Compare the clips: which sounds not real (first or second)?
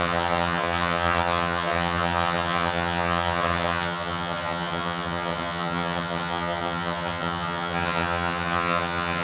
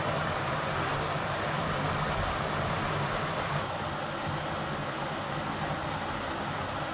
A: first